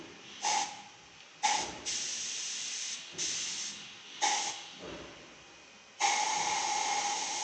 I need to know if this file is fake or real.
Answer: real